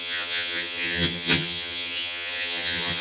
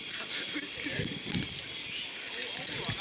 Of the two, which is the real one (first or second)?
second